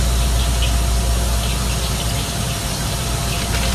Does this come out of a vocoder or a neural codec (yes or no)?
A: no